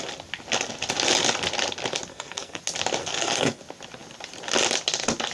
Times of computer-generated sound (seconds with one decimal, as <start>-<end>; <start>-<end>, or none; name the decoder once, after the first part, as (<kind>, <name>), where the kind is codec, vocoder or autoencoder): 2.1-2.6 (codec, SNAC); 3.0-3.6